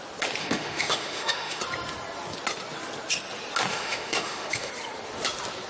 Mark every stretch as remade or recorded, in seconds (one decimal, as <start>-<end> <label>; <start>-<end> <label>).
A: 0.0-0.4 recorded; 0.4-1.6 remade; 1.6-3.7 recorded; 3.7-4.7 remade; 4.7-5.7 recorded

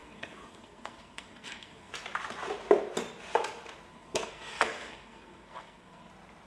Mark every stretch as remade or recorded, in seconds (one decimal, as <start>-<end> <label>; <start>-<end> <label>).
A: 0.0-1.9 remade; 1.9-3.9 recorded; 3.9-6.1 remade; 6.1-6.5 recorded